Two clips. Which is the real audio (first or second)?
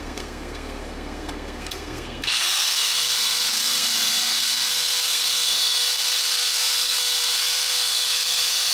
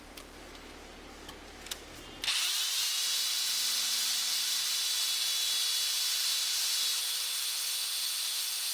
second